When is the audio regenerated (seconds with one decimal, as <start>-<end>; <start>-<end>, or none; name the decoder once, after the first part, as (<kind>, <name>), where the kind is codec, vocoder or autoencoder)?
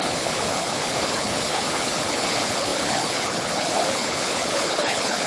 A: 0.0-5.3 (codec, HILCodec)